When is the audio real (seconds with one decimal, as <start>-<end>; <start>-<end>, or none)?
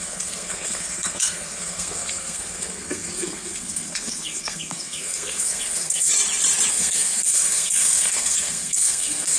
6.1-6.7